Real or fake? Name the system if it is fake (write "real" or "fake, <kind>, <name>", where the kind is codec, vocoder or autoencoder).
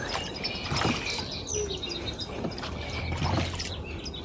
real